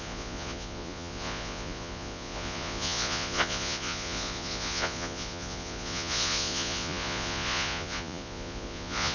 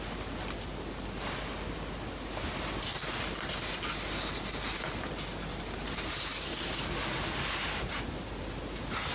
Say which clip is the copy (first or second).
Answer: first